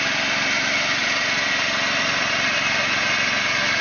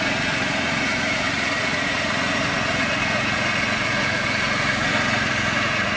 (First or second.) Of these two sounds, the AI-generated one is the second